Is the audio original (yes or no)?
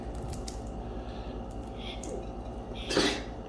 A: yes